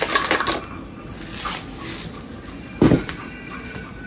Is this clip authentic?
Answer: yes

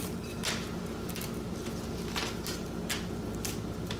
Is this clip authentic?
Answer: yes